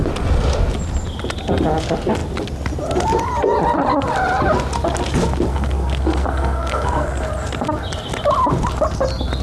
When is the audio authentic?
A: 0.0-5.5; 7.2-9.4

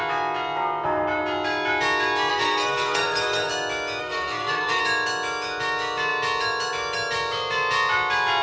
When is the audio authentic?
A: 0.0-2.3; 3.5-4.0; 4.8-8.4

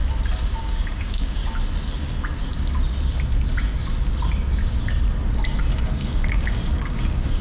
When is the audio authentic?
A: 0.0-0.6; 1.4-5.8

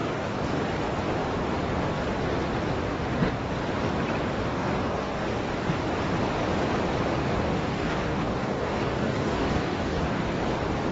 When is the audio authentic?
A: 0.6-4.5; 5.2-7.2; 10.3-10.9